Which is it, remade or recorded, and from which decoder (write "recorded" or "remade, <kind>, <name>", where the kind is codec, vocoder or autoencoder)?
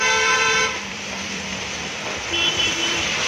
remade, vocoder, BigVGAN v2